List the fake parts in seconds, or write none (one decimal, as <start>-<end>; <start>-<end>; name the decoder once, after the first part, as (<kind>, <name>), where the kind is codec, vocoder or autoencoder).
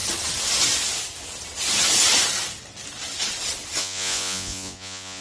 3.8-5.2 (vocoder, Vocos)